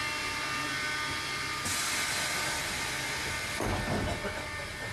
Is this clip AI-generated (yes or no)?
no